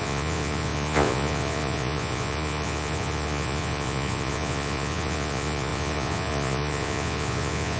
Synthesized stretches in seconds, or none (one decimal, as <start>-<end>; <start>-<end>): 0.0-7.8

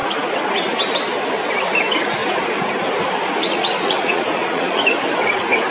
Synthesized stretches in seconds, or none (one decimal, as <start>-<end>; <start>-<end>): 2.2-2.7; 3.4-4.8

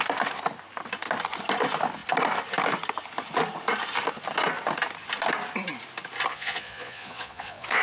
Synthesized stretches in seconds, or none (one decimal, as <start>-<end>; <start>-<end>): 6.3-7.8

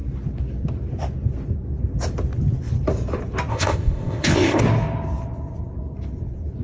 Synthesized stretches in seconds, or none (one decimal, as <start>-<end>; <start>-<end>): 3.5-4.6

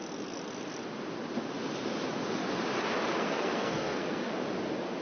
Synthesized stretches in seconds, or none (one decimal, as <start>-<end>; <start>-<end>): 3.1-4.3